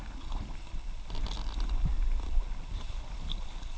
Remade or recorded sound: recorded